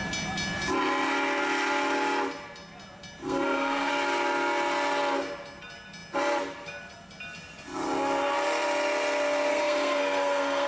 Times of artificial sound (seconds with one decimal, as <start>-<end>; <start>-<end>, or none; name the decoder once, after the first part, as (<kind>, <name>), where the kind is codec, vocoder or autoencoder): 3.2-3.9 (codec, SNAC); 9.5-10.7